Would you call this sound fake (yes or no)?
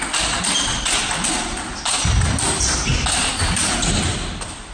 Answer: no